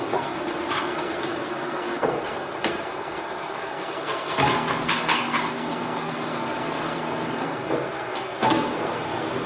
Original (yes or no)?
no